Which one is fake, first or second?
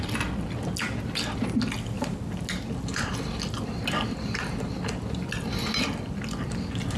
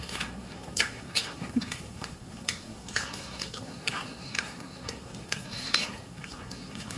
second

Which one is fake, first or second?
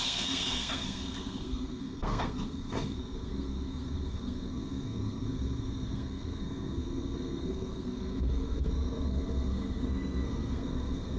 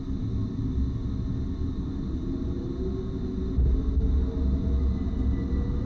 first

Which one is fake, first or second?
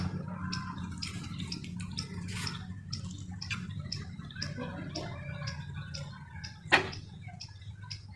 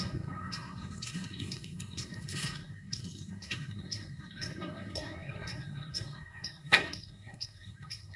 second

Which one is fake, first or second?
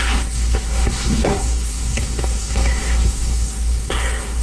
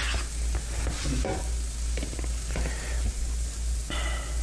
first